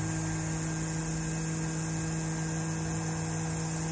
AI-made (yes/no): no